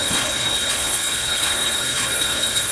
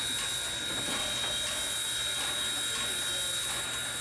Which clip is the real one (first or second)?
second